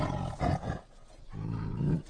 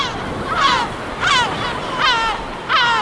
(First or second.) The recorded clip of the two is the second